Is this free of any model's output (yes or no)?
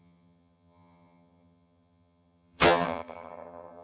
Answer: no